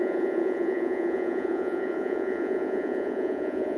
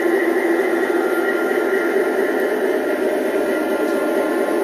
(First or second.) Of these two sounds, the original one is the second